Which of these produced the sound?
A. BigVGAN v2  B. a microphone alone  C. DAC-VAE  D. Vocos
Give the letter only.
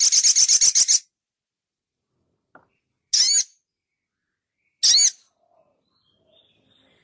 B